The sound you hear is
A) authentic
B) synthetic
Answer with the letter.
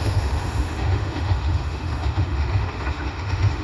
B